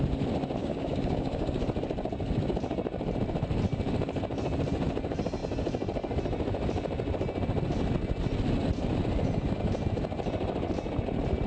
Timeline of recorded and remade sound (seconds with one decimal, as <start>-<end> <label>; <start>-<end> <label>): 0.0-0.6 recorded; 0.6-1.6 remade; 1.6-11.5 recorded